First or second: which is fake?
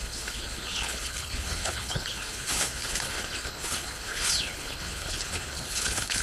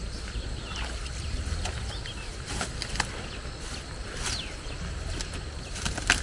first